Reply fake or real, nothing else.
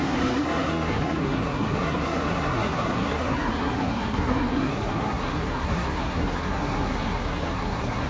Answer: fake